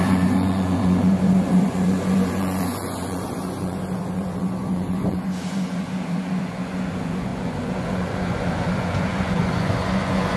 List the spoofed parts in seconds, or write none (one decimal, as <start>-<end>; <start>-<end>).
0.0-10.4